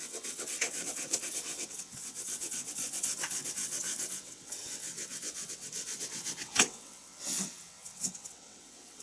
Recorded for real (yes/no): no